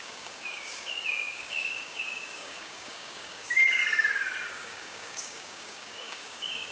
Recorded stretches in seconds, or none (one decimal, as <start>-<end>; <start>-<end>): 3.8-4.5